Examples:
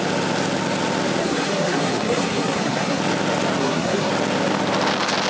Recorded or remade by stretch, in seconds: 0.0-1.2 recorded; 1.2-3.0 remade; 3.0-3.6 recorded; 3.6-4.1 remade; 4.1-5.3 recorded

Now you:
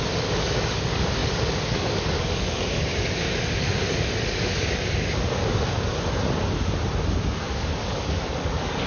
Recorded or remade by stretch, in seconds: 0.0-5.9 remade; 5.9-7.5 recorded; 7.5-8.9 remade

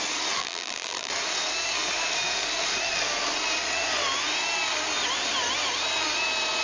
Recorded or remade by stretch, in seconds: 0.0-0.4 recorded; 0.4-1.1 remade; 1.1-6.6 recorded

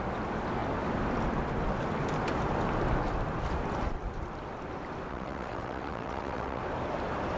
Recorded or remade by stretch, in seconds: 0.0-5.1 recorded; 5.1-6.6 remade; 6.6-7.4 recorded

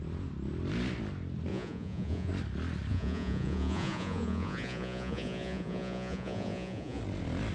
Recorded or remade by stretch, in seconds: 0.0-1.5 recorded; 1.5-2.3 remade; 2.3-2.9 recorded; 2.9-7.0 remade; 7.0-7.5 recorded

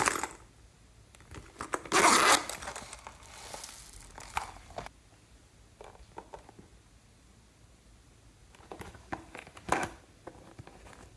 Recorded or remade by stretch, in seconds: 0.0-11.2 recorded

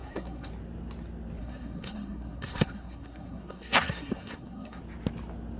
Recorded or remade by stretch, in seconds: 0.0-0.5 remade; 0.5-1.4 recorded; 1.4-4.8 remade; 4.8-5.6 recorded